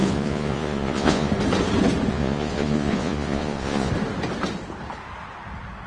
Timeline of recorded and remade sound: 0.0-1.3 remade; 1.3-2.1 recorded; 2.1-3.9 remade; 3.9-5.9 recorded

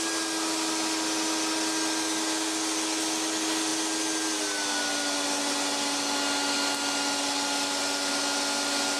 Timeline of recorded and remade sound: 0.0-9.0 recorded

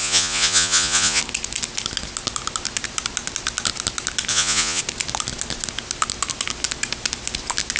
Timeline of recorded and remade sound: 0.0-1.2 remade; 1.2-4.3 recorded; 4.3-4.8 remade; 4.8-7.8 recorded

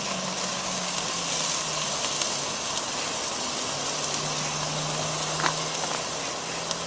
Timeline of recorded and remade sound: 0.0-0.5 recorded; 0.5-1.1 remade; 1.1-6.9 recorded

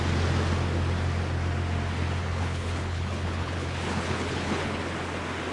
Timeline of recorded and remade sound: 0.0-2.2 recorded; 2.2-4.8 remade; 4.8-5.5 recorded

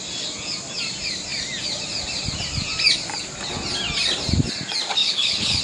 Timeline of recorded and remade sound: 0.0-5.0 recorded; 5.0-5.6 remade

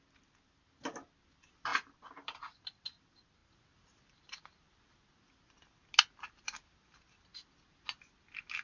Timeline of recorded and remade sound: 0.0-8.6 recorded

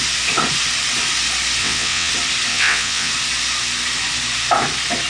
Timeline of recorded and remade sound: 0.0-1.6 recorded; 1.6-2.1 remade; 2.1-2.5 recorded; 2.5-3.1 remade; 3.1-5.1 recorded